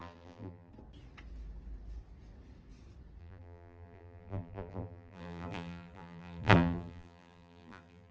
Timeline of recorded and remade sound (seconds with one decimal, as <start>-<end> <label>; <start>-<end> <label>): 0.0-0.7 remade; 0.7-3.2 recorded; 3.2-8.1 remade